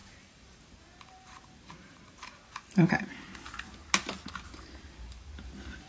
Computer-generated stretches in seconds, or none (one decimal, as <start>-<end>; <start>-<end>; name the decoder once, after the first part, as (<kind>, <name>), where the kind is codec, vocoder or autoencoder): 0.0-3.3 (vocoder, BigVGAN v2); 4.3-5.9

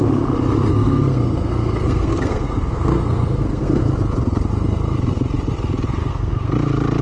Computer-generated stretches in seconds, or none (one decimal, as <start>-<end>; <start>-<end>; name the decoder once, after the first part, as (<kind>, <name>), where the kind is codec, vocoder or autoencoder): 0.7-3.8 (codec, SNAC); 6.0-6.5

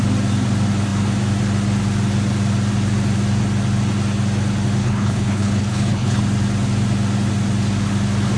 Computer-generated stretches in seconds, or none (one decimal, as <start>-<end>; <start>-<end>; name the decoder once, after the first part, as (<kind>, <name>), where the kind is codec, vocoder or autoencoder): 4.8-6.2 (codec, HILCodec)

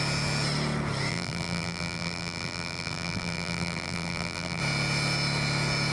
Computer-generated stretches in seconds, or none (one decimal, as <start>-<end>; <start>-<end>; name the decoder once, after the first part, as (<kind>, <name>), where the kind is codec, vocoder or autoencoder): 1.1-4.6 (vocoder, BigVGAN v2)

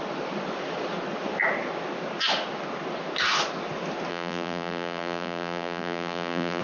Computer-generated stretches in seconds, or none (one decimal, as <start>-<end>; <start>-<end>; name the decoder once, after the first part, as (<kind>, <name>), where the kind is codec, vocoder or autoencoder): 4.1-6.6 (vocoder, BigVGAN v2)

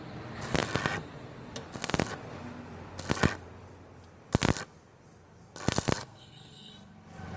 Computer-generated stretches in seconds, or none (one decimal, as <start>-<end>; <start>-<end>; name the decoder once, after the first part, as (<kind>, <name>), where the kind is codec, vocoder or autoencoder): 6.0-6.7 (codec, SNAC)